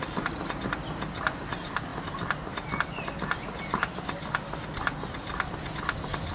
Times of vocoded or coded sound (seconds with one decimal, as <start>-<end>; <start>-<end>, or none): none